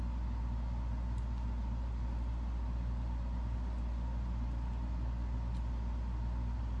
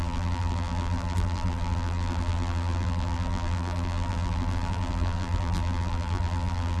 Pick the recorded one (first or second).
first